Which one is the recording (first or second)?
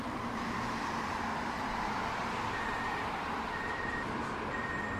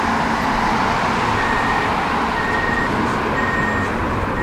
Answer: second